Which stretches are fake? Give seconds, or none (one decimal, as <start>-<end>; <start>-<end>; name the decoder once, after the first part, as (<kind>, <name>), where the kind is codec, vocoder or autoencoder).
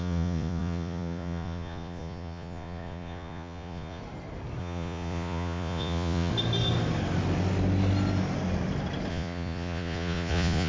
0.0-4.0 (vocoder, Vocos); 4.6-6.3; 9.1-10.7